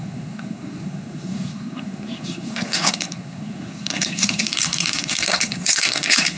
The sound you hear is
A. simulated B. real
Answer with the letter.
A